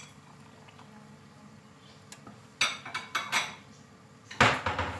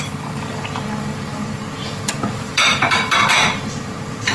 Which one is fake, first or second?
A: second